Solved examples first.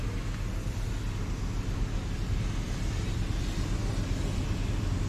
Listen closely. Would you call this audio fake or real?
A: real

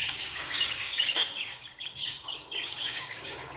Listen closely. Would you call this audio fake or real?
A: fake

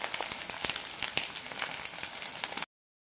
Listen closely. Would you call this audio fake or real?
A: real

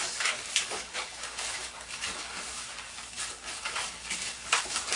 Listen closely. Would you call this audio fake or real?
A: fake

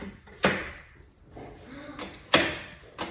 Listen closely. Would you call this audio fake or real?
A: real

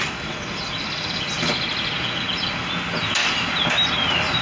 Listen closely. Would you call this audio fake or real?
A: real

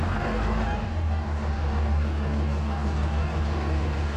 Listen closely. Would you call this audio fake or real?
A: fake